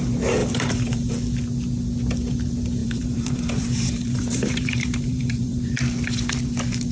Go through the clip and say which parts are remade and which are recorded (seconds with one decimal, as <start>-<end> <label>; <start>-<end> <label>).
0.0-0.4 recorded; 0.4-1.1 remade; 1.1-2.8 recorded; 2.8-5.7 remade; 5.7-6.9 recorded